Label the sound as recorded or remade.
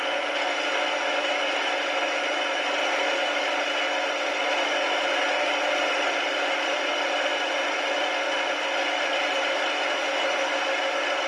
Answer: recorded